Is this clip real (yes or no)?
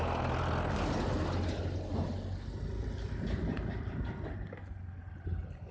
yes